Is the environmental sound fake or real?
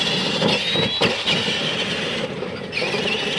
real